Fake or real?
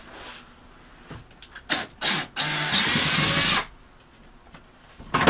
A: real